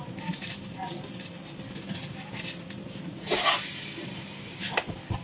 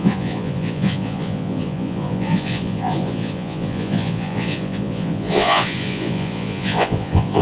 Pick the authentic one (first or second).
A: first